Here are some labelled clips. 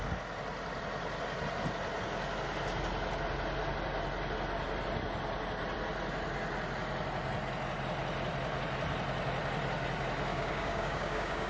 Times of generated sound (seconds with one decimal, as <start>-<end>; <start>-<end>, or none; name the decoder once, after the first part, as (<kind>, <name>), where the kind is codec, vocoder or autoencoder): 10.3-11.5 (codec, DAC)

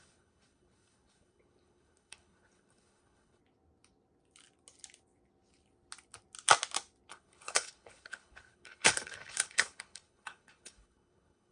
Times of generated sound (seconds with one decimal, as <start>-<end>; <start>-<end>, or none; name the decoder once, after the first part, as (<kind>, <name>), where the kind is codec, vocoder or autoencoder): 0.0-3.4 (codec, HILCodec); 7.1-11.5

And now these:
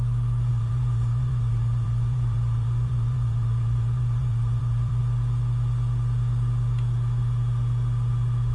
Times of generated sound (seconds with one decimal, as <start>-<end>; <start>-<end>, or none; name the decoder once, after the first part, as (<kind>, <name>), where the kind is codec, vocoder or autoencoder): 0.5-5.0 (vocoder, BigVGAN v2)